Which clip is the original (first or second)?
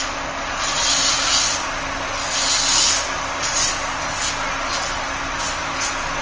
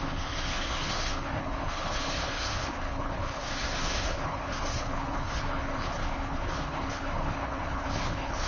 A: first